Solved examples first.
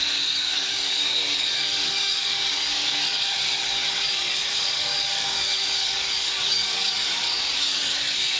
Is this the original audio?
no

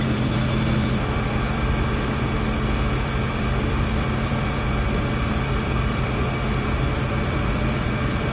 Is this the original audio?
no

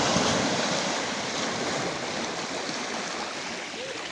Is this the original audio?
yes